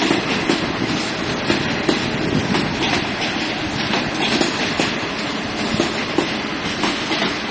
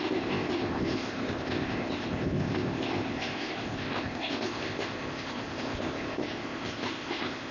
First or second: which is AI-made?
second